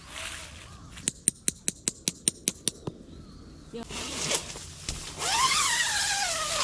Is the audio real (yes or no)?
yes